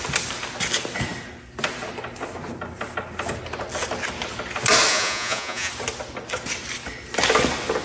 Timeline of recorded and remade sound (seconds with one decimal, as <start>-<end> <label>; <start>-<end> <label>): 0.0-4.9 recorded; 4.9-5.7 remade; 5.7-7.8 recorded